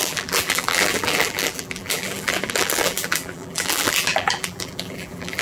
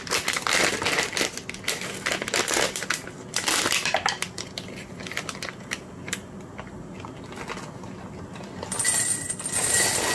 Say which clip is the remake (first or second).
first